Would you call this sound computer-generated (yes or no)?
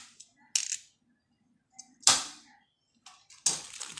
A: no